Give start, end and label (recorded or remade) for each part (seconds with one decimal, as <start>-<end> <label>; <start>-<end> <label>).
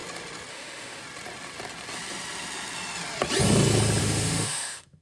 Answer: 0.0-0.5 recorded; 0.5-1.0 remade; 1.0-4.0 recorded; 4.0-5.0 remade